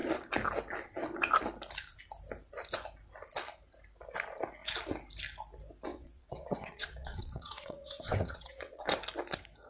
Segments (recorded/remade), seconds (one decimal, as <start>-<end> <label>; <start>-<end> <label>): 0.0-5.9 recorded; 5.9-9.0 remade; 9.0-9.7 recorded